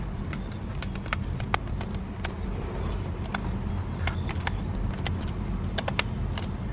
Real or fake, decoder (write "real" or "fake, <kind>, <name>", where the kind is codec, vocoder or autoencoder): real